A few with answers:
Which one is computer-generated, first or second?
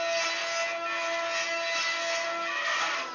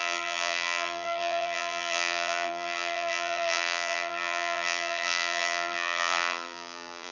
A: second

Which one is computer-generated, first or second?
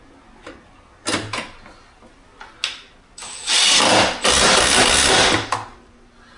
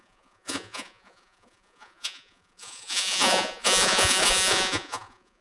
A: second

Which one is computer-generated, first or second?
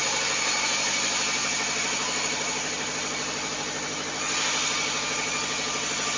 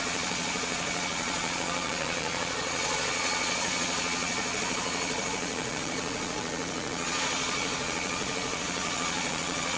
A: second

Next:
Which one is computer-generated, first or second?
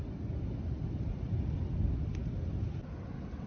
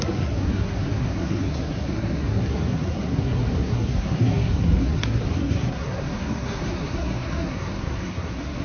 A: second